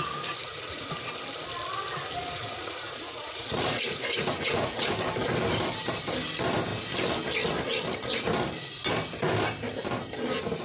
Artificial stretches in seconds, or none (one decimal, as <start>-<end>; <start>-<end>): 0.4-1.1; 2.4-4.9